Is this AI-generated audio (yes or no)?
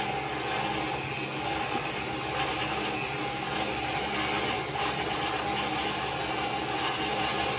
no